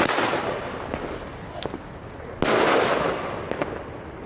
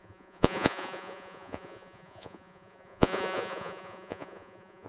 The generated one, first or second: second